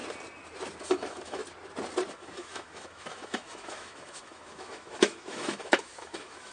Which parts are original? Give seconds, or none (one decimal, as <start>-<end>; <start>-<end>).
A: 0.0-0.8; 1.4-2.1